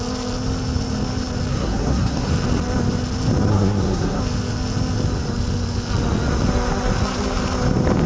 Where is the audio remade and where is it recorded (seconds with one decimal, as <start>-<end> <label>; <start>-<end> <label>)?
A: 0.0-1.5 recorded; 1.5-2.3 remade; 2.3-3.5 recorded; 3.5-4.2 remade; 4.2-8.1 recorded